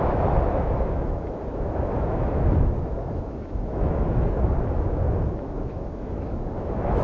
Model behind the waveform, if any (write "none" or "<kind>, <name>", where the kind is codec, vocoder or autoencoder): autoencoder, DAC-VAE